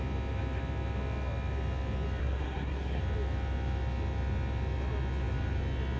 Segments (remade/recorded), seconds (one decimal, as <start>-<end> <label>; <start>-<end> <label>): 0.0-2.2 recorded; 2.2-3.0 remade; 3.0-6.0 recorded